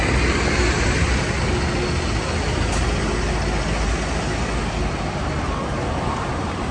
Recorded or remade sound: recorded